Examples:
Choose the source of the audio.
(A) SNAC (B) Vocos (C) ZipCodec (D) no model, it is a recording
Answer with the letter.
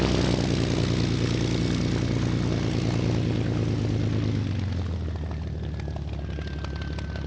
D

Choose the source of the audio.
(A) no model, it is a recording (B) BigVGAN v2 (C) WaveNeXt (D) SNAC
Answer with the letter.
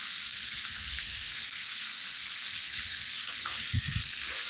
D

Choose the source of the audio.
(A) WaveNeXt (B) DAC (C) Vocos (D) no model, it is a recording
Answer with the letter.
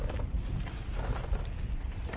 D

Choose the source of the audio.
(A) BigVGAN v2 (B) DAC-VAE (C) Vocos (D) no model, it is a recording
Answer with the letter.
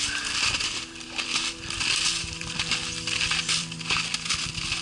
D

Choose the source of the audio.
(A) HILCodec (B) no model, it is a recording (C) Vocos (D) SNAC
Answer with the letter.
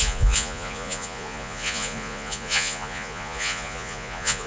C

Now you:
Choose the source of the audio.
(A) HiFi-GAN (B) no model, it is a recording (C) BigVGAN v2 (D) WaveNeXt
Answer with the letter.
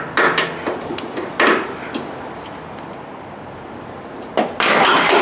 C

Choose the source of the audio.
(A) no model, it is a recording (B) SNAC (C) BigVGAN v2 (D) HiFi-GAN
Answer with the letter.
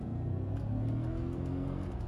B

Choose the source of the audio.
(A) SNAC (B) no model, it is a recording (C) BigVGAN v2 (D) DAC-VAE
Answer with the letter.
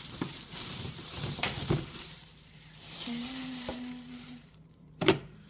C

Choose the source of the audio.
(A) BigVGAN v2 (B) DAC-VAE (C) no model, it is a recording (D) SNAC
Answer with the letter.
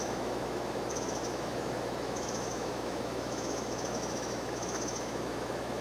B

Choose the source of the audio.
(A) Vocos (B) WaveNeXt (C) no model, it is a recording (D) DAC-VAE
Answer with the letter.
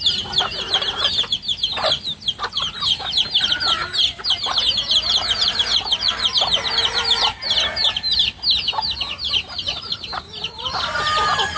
C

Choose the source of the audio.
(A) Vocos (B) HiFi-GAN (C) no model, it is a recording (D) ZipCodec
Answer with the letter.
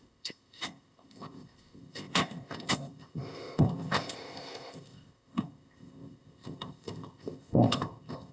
D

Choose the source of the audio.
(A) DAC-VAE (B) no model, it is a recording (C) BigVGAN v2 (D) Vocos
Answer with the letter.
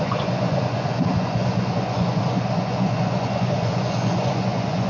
D